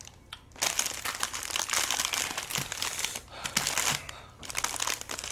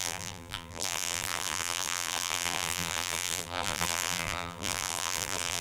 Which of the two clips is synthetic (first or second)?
second